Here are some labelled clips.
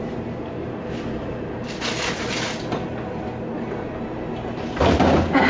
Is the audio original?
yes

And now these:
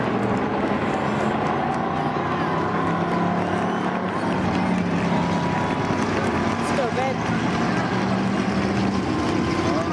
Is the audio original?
yes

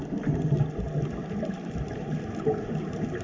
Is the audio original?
yes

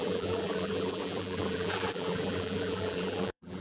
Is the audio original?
no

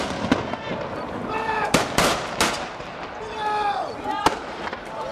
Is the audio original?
yes